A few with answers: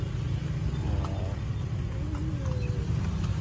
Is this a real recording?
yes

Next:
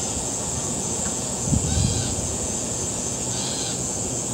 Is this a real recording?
no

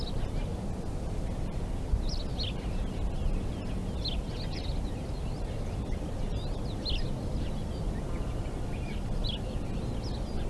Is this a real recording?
yes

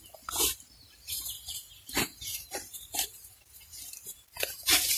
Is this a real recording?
no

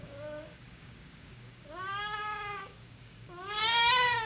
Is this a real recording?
no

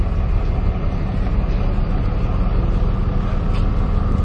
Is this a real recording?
yes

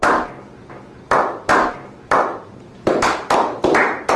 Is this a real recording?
yes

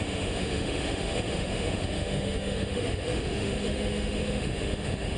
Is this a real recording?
no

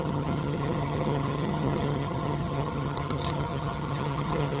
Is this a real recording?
no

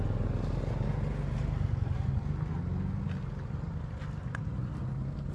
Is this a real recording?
yes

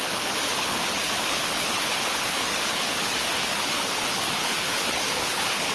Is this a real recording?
no